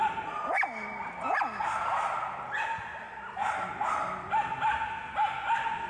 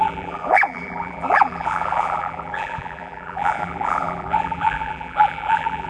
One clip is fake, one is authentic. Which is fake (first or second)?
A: second